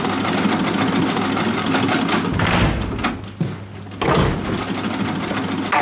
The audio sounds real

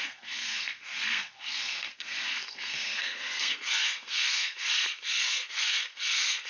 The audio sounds fake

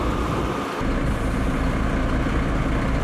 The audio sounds real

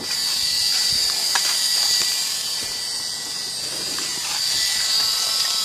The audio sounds fake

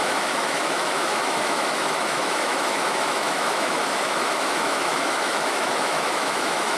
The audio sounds fake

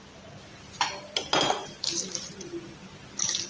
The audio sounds real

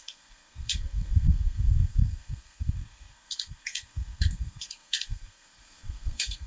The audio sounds fake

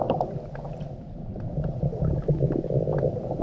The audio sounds real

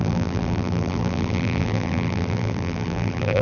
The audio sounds fake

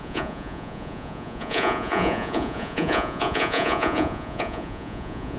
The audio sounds fake